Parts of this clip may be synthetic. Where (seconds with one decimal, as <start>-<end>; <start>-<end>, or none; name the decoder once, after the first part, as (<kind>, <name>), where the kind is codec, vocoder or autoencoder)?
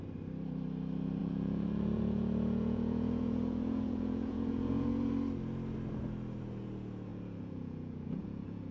1.2-5.1 (vocoder, Vocos); 7.1-8.7